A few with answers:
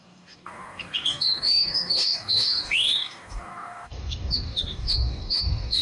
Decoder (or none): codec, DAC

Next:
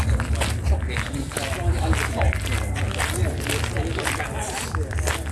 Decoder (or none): none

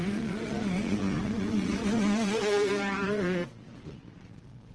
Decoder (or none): vocoder, Vocos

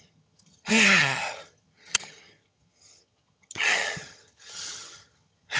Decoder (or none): vocoder, HiFi-GAN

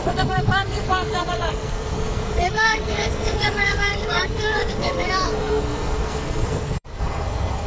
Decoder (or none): codec, SNAC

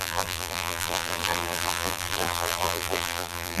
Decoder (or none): vocoder, BigVGAN v2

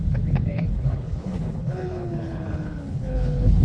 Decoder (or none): codec, HILCodec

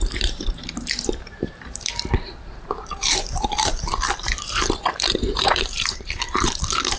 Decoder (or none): vocoder, BigVGAN v2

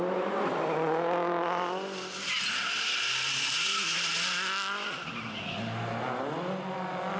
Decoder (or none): none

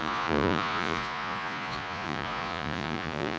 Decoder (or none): vocoder, Vocos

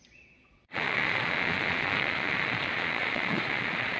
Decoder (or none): vocoder, Vocos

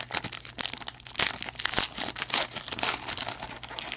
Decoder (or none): none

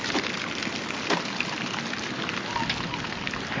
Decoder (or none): none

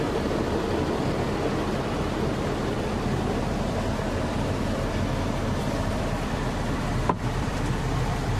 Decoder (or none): vocoder, BigVGAN v2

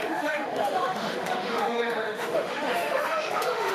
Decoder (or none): autoencoder, DAC-VAE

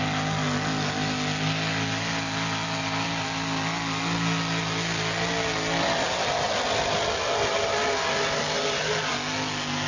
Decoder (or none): none